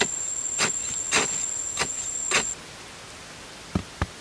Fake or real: real